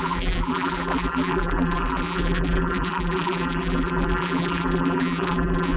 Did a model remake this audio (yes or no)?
yes